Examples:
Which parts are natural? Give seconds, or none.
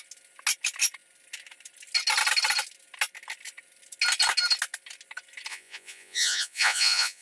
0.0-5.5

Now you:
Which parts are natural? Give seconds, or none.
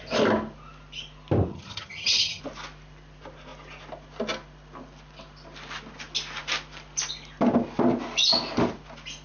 0.0-1.5; 2.4-9.2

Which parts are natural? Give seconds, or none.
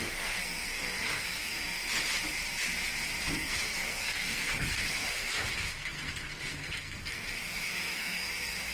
1.8-3.3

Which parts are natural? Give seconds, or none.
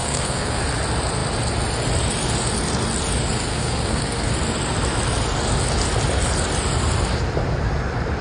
0.6-3.5; 4.3-8.2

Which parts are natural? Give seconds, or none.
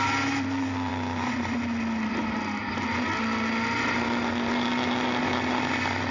0.0-6.1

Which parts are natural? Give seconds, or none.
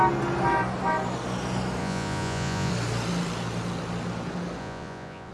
0.0-1.8; 2.7-4.6